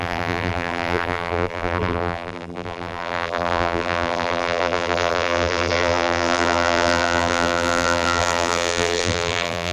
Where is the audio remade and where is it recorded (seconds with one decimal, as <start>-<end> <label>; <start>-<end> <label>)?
0.0-9.7 remade